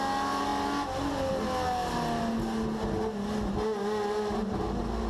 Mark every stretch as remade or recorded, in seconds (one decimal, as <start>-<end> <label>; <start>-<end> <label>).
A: 0.0-5.1 recorded